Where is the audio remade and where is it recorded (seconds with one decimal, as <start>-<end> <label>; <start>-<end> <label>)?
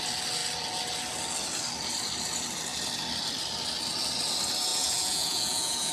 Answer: 0.0-4.7 recorded; 4.7-5.9 remade